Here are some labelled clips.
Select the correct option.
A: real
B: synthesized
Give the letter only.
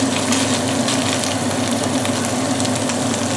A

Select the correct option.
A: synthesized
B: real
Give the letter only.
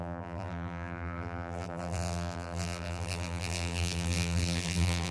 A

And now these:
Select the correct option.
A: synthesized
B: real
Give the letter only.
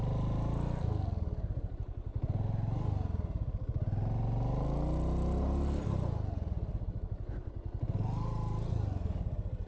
B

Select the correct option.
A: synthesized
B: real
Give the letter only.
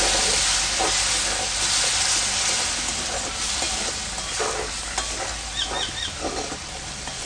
B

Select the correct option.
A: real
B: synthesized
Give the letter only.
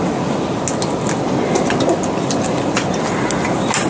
A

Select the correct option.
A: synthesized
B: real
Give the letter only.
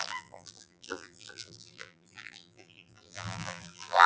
A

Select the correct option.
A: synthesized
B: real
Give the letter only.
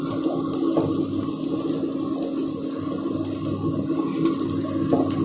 B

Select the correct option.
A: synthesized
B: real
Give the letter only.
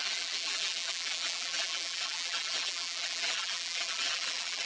A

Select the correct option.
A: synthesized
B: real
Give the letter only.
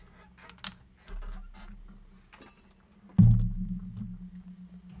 B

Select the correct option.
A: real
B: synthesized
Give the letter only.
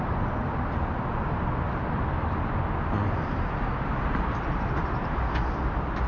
A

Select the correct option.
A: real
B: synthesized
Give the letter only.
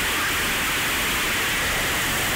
A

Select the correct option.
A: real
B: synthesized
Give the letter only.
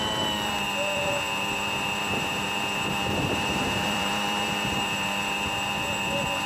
B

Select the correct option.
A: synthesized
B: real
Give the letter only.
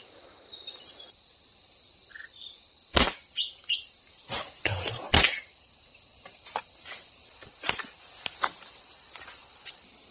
A